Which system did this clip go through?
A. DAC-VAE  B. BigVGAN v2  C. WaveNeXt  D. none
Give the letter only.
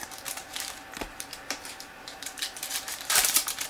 B